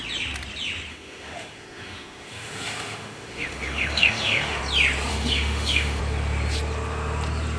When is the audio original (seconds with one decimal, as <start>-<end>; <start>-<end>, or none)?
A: 0.0-0.9; 4.6-5.1; 6.0-7.6